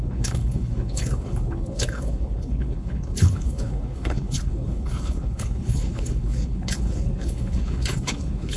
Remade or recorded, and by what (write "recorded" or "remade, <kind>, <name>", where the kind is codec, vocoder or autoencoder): remade, codec, HILCodec